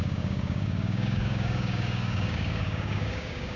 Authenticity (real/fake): fake